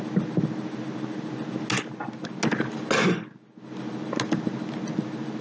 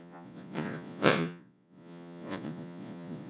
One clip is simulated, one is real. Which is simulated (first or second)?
second